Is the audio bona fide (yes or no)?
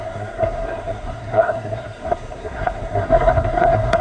no